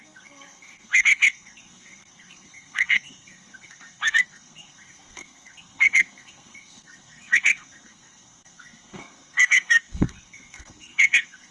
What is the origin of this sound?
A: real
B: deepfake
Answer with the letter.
B